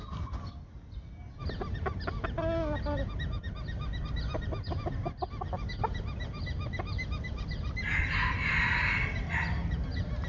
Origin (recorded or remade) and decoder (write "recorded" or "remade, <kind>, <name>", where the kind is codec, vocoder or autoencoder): recorded